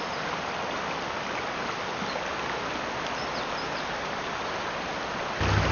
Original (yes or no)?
yes